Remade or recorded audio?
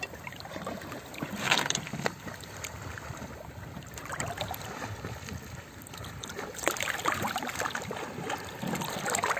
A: remade